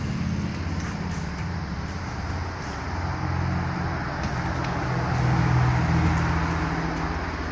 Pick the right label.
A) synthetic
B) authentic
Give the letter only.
B